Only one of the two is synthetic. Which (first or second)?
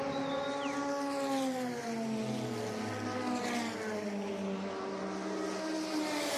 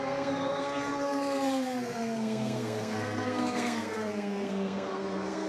second